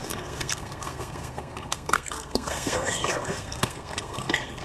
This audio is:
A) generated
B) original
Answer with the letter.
A